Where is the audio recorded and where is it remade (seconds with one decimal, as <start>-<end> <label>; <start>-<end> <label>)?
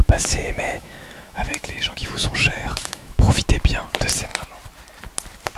0.0-3.4 remade; 3.4-5.6 recorded